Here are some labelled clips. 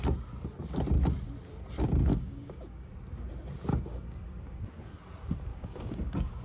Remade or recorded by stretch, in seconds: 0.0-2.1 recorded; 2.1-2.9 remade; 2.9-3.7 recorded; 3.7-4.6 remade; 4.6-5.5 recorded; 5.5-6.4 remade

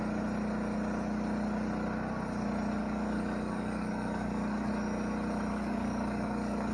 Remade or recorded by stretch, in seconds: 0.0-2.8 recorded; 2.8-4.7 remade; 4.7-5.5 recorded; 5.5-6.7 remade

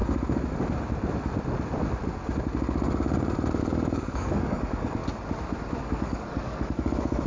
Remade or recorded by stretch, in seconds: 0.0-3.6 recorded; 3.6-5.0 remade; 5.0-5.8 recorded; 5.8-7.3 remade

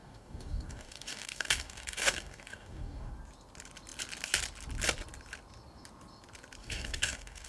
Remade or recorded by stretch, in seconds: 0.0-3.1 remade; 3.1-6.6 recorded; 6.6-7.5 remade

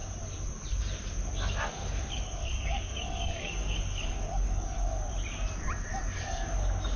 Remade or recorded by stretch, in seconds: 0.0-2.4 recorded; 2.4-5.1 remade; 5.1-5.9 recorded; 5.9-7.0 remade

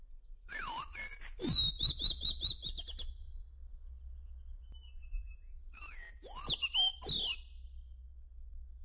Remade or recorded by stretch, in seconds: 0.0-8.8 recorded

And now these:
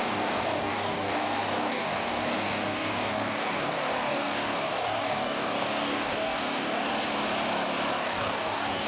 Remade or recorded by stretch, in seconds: 0.0-6.9 remade; 6.9-7.9 recorded; 7.9-8.9 remade